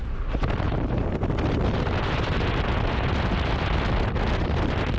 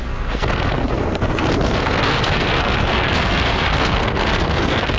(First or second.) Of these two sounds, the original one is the first